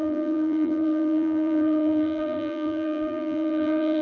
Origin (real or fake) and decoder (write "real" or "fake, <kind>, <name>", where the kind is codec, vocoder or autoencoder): fake, vocoder, BigVGAN v2